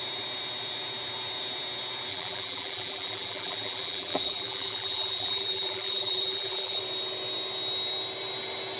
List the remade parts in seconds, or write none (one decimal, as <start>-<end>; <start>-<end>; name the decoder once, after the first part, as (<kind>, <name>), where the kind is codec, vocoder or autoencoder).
2.1-6.8 (vocoder, BigVGAN v2)